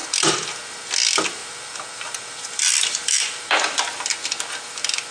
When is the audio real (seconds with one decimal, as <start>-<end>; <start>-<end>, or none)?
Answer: 0.6-1.4; 4.1-5.1